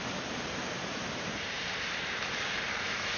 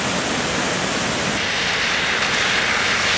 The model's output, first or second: first